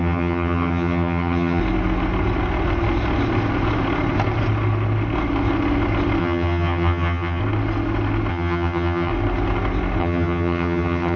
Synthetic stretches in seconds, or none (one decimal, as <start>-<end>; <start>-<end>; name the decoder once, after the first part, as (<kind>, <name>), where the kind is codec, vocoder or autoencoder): 0.0-1.6 (vocoder, HiFi-GAN); 6.2-7.4; 8.3-9.1; 10.0-11.2